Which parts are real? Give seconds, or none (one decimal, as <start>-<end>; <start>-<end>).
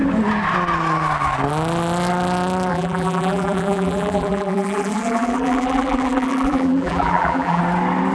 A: 0.0-2.7; 7.6-8.1